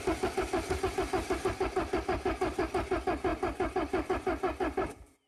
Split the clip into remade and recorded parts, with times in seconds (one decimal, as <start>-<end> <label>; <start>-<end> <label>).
0.0-5.3 recorded